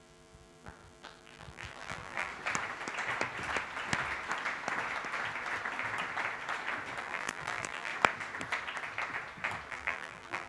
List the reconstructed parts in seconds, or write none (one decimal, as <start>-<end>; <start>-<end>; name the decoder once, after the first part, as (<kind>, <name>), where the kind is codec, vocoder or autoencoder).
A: 0.0-2.3 (vocoder, BigVGAN v2); 7.0-7.9; 9.7-10.5